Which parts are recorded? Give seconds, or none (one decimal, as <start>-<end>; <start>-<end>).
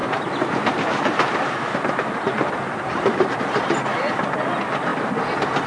3.4-5.7